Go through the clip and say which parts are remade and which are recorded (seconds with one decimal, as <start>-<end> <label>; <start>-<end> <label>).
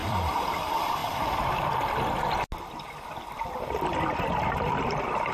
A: 0.0-1.0 remade; 1.0-4.2 recorded; 4.2-5.3 remade